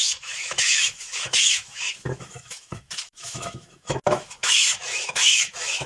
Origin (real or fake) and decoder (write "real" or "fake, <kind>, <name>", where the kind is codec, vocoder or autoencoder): fake, autoencoder, DAC-VAE